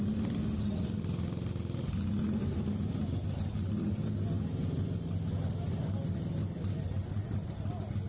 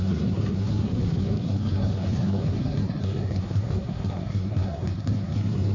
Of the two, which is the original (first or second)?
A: first